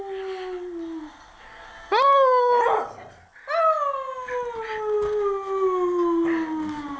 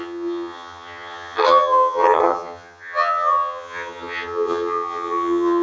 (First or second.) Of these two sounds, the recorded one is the first